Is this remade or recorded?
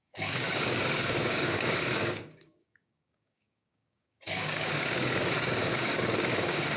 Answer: remade